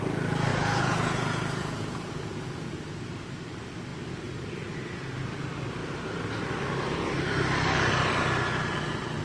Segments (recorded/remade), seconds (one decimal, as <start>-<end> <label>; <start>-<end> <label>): 0.0-0.5 recorded; 0.5-2.7 remade; 2.7-9.2 recorded